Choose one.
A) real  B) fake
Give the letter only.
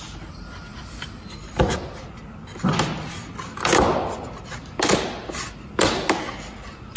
A